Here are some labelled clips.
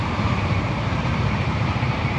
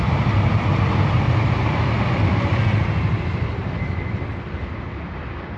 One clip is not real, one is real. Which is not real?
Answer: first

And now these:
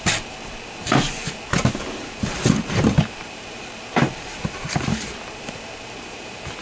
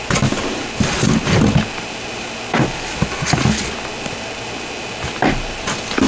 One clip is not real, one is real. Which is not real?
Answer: first